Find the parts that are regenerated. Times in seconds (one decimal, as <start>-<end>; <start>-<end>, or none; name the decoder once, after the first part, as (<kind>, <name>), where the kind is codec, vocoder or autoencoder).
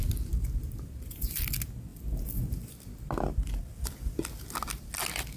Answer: none